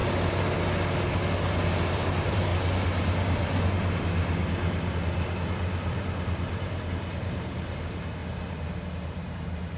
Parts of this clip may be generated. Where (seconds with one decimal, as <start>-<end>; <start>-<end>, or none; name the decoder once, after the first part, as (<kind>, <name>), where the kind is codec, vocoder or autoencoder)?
1.7-2.5 (vocoder, BigVGAN v2); 6.9-8.2; 9.0-9.8